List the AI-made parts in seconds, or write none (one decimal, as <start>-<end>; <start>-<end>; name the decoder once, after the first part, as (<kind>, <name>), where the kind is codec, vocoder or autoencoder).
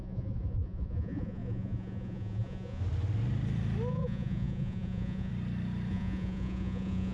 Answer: 0.0-2.8 (vocoder, Vocos); 3.9-5.3; 5.9-7.1